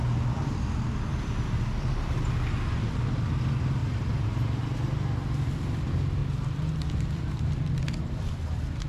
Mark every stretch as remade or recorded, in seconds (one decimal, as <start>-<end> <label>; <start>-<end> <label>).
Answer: 0.0-3.8 recorded; 3.8-4.6 remade; 4.6-6.2 recorded; 6.2-6.7 remade; 6.7-8.9 recorded